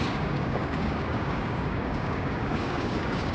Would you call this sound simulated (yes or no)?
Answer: yes